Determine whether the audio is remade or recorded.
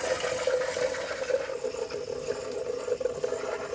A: recorded